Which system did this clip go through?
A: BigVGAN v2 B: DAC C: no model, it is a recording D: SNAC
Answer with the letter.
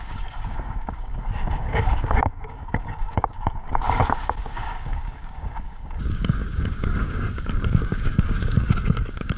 B